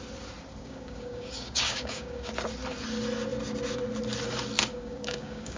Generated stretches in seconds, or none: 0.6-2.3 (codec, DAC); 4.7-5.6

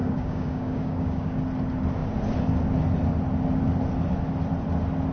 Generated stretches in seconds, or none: 0.0-1.4 (codec, DAC)

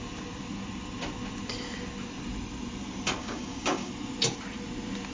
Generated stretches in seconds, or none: 3.2-3.9 (codec, DAC)

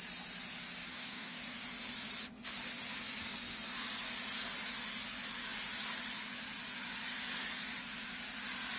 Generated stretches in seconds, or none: 0.9-1.4 (codec, DAC)

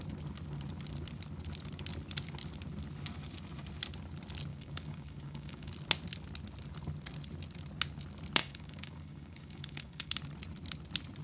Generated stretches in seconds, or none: 4.5-5.7 (codec, DAC); 8.4-10.1